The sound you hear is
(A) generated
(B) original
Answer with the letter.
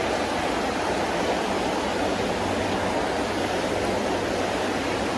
A